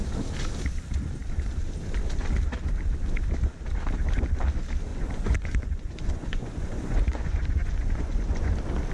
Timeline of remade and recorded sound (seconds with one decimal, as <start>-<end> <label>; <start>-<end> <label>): 0.0-4.9 recorded; 4.9-8.5 remade; 8.5-8.9 recorded